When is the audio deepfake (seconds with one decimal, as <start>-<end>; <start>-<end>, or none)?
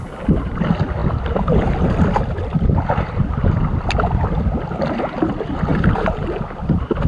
5.7-6.4